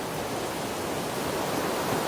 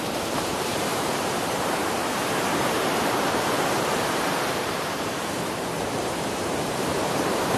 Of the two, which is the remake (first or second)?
second